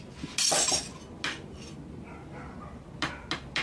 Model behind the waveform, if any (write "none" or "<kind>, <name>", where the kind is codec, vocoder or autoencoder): none